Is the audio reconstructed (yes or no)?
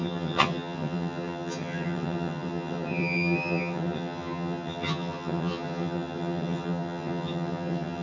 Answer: yes